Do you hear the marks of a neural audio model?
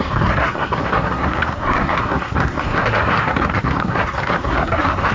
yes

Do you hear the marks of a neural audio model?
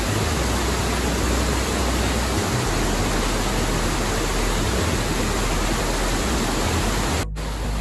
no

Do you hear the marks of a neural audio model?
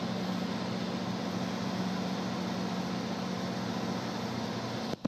no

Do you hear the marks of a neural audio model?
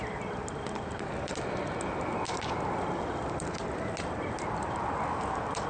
no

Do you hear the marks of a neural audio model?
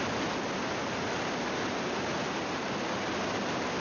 no